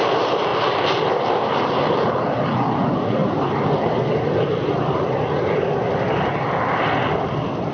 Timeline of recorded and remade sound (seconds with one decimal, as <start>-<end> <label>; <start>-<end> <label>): 0.0-7.7 recorded